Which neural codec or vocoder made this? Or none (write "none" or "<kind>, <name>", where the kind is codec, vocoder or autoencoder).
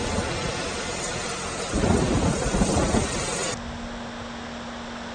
none